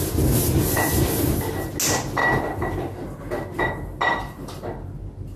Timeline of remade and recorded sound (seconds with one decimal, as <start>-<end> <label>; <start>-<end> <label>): 0.0-5.4 recorded